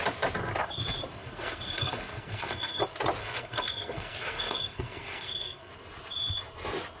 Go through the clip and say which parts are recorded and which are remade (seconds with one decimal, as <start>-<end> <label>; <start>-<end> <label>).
0.0-1.2 recorded; 1.2-2.8 remade; 2.8-3.2 recorded; 3.2-5.7 remade; 5.7-7.0 recorded